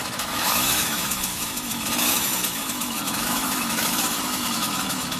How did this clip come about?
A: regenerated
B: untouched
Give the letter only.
A